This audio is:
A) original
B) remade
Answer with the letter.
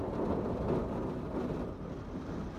A